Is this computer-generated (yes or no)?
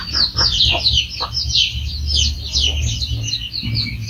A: no